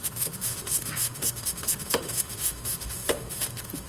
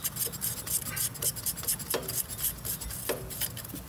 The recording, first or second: second